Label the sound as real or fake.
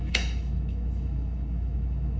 fake